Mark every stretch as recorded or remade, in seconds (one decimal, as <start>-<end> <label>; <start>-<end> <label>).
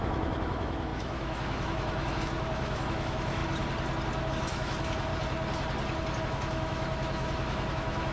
0.0-3.4 remade; 3.4-4.3 recorded; 4.3-5.1 remade; 5.1-6.2 recorded; 6.2-8.1 remade